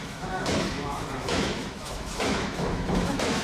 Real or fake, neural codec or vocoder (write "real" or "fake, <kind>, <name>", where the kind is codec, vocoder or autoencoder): fake, autoencoder, DAC-VAE